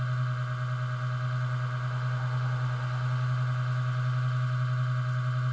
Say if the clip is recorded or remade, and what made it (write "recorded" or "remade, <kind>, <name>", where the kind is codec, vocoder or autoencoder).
recorded